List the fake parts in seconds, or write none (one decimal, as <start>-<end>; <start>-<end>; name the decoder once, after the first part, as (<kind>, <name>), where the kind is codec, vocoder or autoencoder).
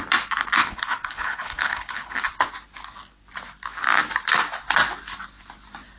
0.6-2.1 (codec, HILCodec)